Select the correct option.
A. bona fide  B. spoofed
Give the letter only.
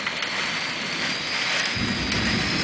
A